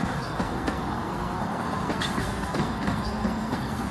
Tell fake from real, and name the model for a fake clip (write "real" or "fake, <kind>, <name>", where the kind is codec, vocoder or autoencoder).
fake, codec, SNAC